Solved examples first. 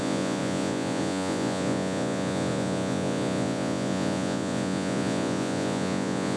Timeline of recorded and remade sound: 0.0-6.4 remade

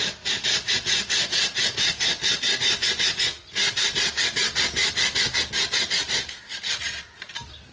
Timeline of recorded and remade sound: 0.0-7.7 recorded